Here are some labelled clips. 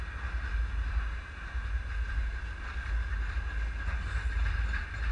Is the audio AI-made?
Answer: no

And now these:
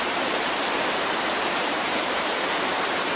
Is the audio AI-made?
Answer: yes